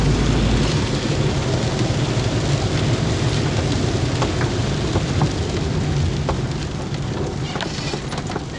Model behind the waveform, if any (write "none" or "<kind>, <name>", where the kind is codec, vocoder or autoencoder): none